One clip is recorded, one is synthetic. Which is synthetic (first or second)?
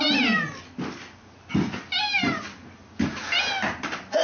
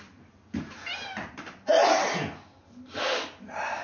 second